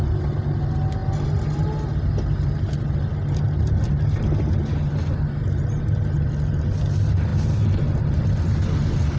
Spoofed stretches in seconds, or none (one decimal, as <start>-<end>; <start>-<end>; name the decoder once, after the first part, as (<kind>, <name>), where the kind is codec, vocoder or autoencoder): none